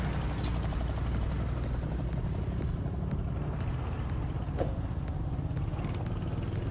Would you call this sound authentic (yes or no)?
yes